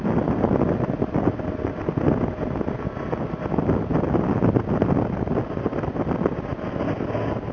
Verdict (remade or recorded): recorded